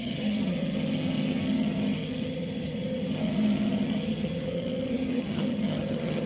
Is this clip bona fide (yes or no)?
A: no